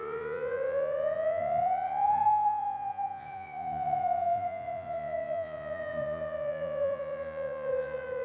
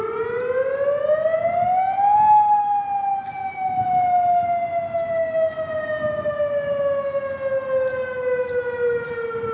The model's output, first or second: first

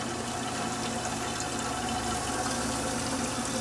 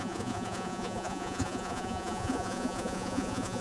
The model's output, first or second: second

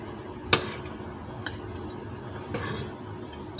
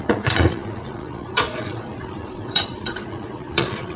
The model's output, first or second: second